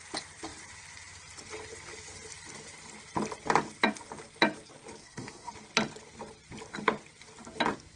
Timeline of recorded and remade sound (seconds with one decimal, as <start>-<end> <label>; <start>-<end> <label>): 0.0-5.0 recorded; 5.0-5.5 remade; 5.5-8.0 recorded